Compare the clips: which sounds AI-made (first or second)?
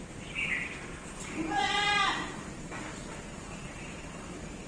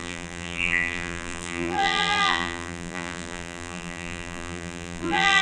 second